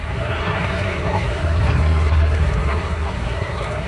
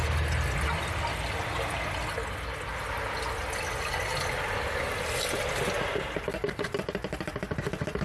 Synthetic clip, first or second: first